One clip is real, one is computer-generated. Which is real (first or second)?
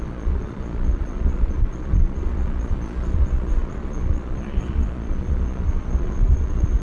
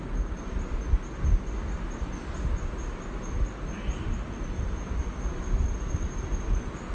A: second